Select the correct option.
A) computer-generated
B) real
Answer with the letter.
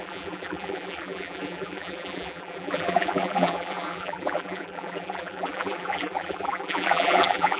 A